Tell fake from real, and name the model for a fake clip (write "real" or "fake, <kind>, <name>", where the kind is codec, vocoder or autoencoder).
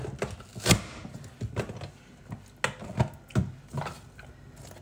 real